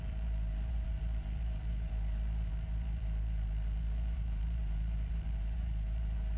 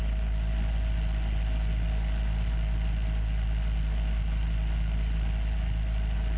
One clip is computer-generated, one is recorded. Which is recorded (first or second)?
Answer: second